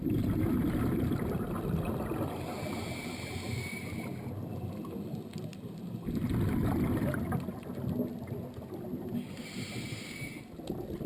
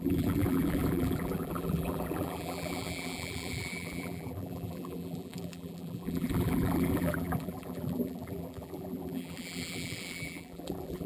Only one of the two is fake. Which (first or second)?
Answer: second